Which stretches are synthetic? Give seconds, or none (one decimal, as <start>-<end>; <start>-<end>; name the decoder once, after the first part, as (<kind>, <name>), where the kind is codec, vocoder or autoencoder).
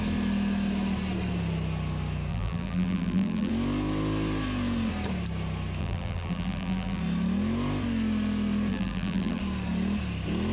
2.3-3.5 (vocoder, BigVGAN v2); 5.8-7.0; 8.7-9.4